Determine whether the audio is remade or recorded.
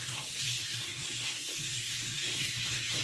remade